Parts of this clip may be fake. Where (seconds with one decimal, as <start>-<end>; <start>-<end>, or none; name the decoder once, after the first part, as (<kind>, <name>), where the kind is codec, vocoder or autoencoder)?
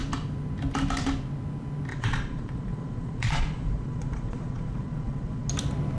1.9-5.5 (vocoder, Vocos)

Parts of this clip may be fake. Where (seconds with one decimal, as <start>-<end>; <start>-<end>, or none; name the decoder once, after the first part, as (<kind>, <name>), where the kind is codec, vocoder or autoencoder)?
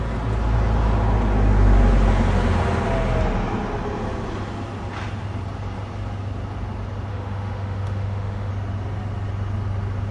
7.1-8.5 (autoencoder, DAC-VAE)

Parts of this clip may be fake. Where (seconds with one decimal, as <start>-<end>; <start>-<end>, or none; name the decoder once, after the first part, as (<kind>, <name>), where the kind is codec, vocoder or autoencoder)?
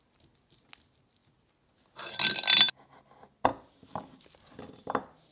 3.5-4.2 (vocoder, BigVGAN v2)